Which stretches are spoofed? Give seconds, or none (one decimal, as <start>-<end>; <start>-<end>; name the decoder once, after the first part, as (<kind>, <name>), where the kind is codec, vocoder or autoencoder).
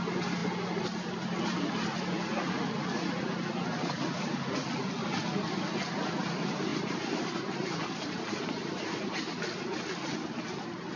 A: 6.7-9.2 (vocoder, BigVGAN v2)